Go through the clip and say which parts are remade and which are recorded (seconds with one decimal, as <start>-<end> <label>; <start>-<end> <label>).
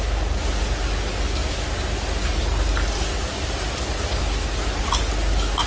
0.0-5.7 recorded